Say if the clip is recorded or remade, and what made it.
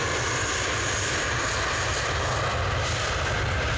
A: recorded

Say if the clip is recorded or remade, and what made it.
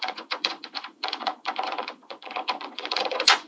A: remade, vocoder, Vocos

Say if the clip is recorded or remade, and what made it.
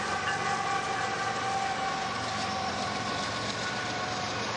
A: recorded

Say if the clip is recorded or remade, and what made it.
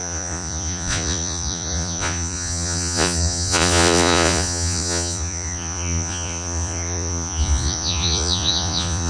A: remade, vocoder, Vocos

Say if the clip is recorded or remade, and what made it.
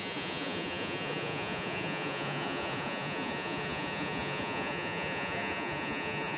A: remade, vocoder, Vocos